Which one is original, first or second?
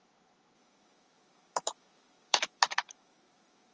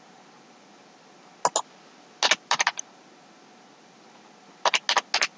second